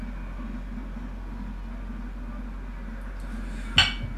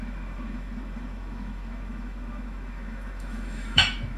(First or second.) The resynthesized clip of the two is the second